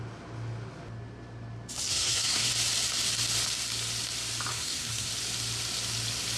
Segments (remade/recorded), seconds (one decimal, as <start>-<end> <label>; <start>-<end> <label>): 0.0-1.9 recorded; 1.9-2.5 remade; 2.5-4.5 recorded; 4.5-5.1 remade; 5.1-6.4 recorded